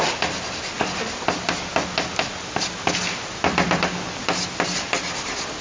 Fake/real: real